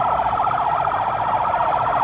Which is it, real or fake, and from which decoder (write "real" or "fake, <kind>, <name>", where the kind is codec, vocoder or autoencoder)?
real